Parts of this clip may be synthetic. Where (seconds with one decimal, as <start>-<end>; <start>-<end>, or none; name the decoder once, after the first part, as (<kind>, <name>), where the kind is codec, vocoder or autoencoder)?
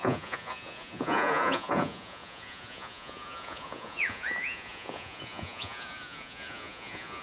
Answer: 0.0-7.2 (vocoder, Vocos)